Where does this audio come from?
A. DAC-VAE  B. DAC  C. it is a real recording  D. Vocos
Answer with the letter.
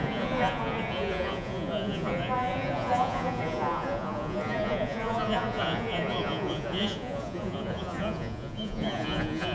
D